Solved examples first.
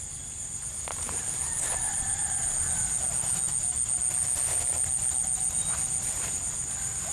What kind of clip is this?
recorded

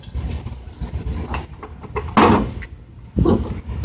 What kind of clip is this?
recorded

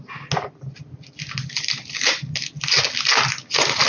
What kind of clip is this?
recorded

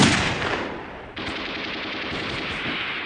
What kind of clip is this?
remade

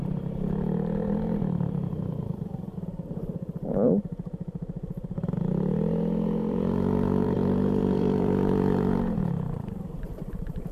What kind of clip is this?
remade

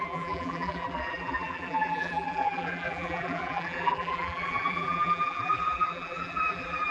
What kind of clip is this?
remade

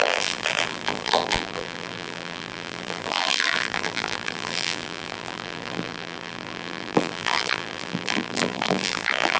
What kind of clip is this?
remade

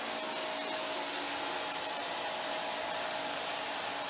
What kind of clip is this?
recorded